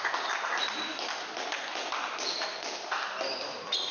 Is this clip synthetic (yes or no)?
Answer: no